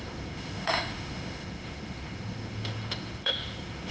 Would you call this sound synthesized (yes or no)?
yes